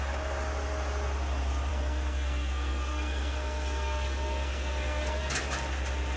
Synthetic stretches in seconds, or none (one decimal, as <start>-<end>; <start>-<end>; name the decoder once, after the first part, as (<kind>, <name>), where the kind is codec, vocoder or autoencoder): 1.7-5.4 (codec, SNAC)